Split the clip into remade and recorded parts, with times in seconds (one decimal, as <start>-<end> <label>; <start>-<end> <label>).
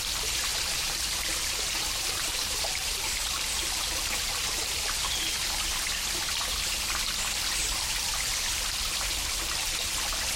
0.0-0.5 recorded; 0.5-5.0 remade; 5.0-10.4 recorded